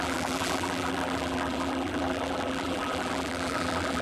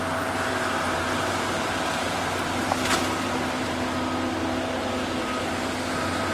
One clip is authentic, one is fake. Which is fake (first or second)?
first